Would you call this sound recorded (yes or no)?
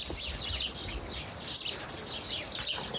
yes